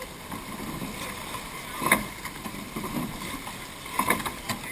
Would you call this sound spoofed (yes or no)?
no